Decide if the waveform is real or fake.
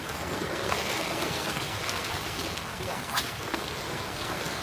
fake